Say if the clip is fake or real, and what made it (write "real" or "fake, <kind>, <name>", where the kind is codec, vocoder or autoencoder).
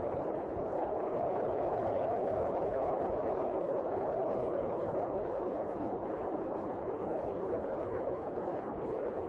fake, codec, HILCodec